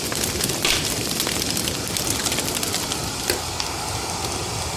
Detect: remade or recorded recorded